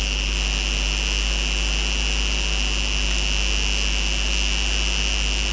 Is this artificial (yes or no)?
no